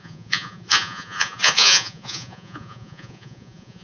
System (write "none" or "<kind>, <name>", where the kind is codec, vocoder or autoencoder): vocoder, Vocos